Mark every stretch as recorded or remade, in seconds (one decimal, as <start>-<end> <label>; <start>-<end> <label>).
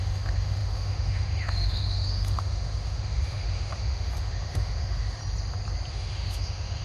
0.0-5.2 remade; 5.2-5.9 recorded; 5.9-6.8 remade